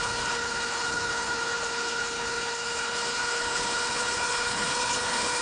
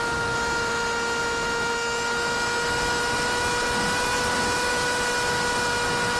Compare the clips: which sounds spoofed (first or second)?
first